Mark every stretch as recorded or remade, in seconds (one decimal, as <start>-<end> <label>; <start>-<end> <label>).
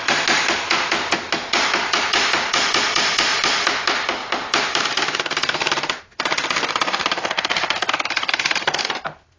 0.0-3.3 recorded; 3.3-3.8 remade; 3.8-4.2 recorded; 4.2-9.0 remade; 9.0-9.4 recorded